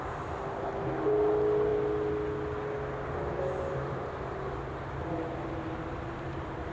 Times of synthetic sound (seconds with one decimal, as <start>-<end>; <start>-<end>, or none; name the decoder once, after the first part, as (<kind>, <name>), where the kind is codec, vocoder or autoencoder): none